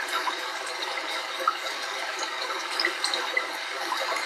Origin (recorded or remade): remade